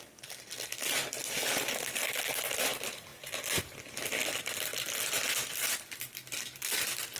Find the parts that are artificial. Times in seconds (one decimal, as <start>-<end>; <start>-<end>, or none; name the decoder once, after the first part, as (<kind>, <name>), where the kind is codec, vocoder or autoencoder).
0.0-1.2 (vocoder, BigVGAN v2); 2.3-3.1; 3.6-4.7; 5.9-7.2